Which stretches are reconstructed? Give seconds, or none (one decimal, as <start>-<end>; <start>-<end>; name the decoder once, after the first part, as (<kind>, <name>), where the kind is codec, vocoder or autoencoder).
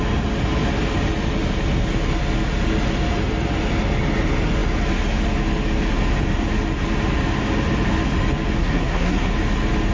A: 8.6-9.3 (codec, SNAC)